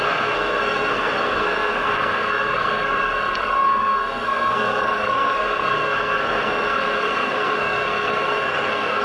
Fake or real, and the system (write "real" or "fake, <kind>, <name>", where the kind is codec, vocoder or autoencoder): fake, codec, SNAC